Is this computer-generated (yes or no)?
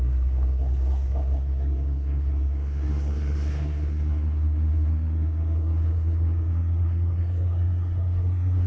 yes